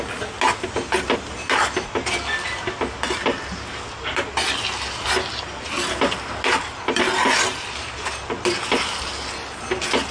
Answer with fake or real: real